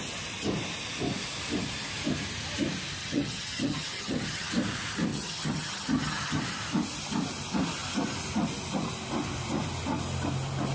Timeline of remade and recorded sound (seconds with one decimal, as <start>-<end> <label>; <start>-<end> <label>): 0.0-3.0 recorded; 3.0-4.5 remade; 4.5-5.1 recorded; 5.1-6.4 remade; 6.4-10.7 recorded